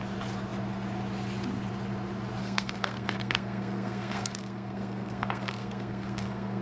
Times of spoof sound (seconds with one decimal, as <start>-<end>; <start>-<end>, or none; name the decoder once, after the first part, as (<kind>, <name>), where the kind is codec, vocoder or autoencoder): 2.4-6.6 (codec, SNAC)